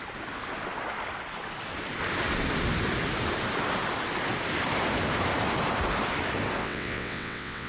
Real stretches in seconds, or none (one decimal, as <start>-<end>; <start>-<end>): 0.0-6.6